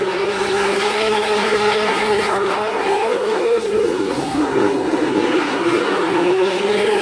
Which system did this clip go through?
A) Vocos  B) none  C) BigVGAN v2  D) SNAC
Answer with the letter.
D